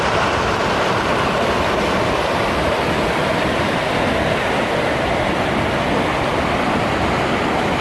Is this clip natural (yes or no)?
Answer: yes